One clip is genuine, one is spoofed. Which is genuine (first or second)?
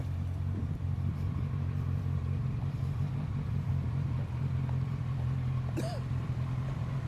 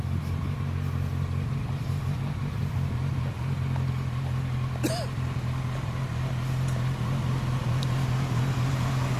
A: second